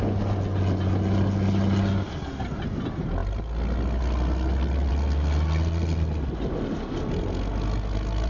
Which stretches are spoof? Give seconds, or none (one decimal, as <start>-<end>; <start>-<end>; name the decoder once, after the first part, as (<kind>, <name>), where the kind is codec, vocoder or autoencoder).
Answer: none